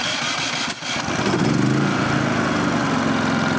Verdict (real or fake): real